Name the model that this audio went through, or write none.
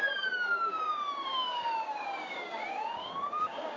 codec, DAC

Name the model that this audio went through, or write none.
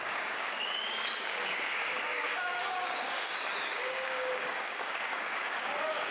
codec, DAC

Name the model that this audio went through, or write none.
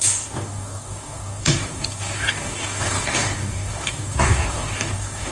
codec, DAC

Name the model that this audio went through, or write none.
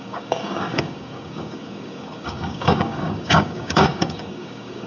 codec, DAC